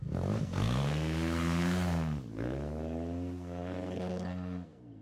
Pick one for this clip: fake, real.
fake